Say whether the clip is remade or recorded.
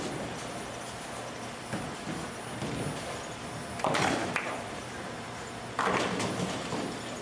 recorded